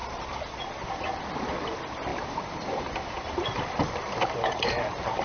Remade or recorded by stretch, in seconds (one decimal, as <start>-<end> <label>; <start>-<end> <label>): 0.0-2.1 recorded; 2.1-5.2 remade